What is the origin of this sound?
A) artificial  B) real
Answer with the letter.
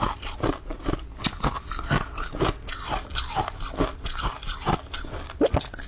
B